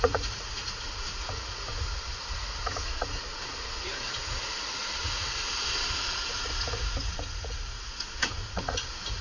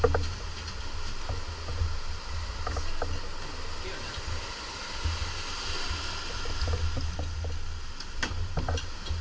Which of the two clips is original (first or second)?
second